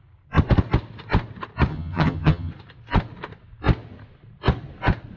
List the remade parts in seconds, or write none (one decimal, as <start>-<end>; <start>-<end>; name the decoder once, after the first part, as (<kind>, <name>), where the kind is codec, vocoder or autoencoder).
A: 1.7-2.5 (vocoder, HiFi-GAN)